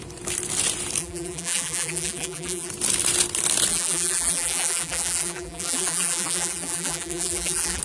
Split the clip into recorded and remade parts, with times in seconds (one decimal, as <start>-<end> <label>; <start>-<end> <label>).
0.0-1.0 recorded; 1.0-2.7 remade; 2.7-3.7 recorded; 3.7-7.8 remade

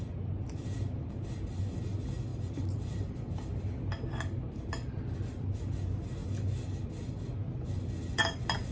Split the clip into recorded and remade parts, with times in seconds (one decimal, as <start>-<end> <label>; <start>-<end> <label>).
0.0-2.3 recorded; 2.3-3.3 remade; 3.3-8.7 recorded

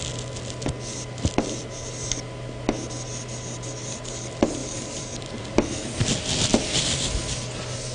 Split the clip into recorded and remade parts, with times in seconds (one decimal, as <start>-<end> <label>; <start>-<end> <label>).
0.0-4.6 recorded; 4.6-6.1 remade; 6.1-6.5 recorded; 6.5-7.2 remade; 7.2-7.9 recorded

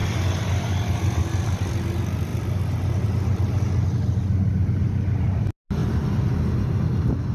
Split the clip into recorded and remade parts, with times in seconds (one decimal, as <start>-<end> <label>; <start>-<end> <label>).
0.0-2.3 recorded; 2.3-3.6 remade; 3.6-5.8 recorded; 5.8-6.3 remade; 6.3-7.3 recorded

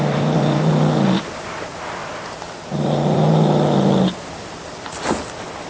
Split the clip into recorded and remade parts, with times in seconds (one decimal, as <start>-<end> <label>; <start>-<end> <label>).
0.0-5.7 remade

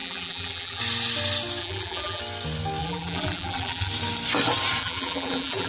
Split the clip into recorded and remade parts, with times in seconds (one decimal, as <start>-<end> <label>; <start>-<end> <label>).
0.0-0.8 remade; 0.8-1.6 recorded; 1.6-2.2 remade; 2.2-2.8 recorded; 2.8-3.9 remade; 3.9-4.8 recorded; 4.8-5.7 remade

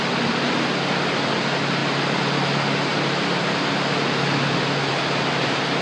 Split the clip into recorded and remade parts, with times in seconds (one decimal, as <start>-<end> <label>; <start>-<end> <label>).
0.0-5.8 recorded